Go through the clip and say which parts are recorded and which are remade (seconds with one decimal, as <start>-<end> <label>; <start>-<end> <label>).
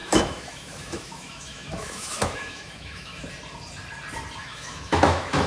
0.0-3.3 remade; 3.3-4.4 recorded; 4.4-5.5 remade